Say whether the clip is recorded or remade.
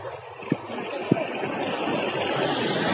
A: recorded